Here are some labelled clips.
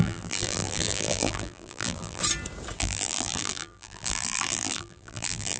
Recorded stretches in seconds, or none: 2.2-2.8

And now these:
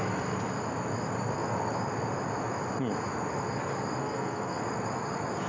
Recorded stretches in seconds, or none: 0.0-4.0; 4.6-5.5

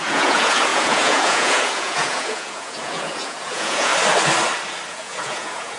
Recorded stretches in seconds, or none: 3.9-4.9

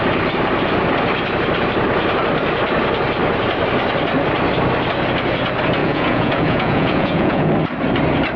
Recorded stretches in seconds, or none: 0.0-5.8; 7.5-8.4